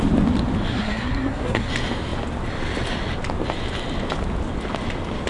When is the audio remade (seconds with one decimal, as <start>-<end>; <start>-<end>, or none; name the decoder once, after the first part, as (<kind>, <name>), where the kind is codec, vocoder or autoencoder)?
0.7-1.7 (codec, SNAC)